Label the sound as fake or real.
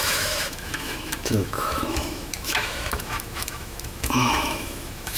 fake